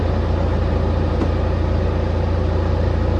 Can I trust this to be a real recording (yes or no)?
yes